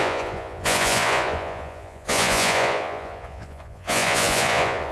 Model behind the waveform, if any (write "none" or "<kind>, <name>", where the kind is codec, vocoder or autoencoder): vocoder, Vocos